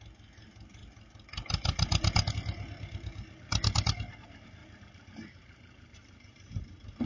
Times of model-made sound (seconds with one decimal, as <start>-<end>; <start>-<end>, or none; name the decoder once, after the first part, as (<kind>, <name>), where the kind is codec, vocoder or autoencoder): 4.6-6.6 (vocoder, BigVGAN v2)

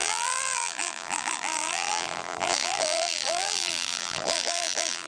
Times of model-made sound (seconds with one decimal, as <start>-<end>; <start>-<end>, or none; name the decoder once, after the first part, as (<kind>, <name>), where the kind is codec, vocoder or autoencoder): 0.0-5.1 (vocoder, BigVGAN v2)